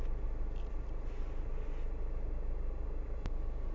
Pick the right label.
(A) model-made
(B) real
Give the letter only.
B